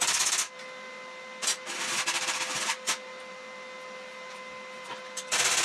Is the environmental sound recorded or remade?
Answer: recorded